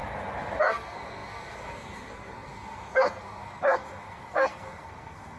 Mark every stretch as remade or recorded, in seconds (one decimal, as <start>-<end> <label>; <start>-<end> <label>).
0.0-0.6 recorded; 0.6-5.4 remade